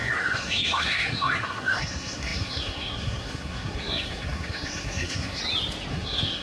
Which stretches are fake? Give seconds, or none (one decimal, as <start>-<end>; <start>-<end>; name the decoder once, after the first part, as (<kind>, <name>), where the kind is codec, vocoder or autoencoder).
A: 0.0-5.4 (codec, SNAC); 5.9-6.4